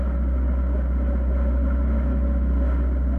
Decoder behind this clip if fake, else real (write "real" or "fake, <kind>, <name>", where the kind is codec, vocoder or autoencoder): real